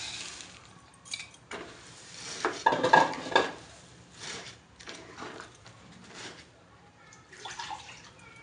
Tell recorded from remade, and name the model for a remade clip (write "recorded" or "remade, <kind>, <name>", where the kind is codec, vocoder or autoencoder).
remade, vocoder, BigVGAN v2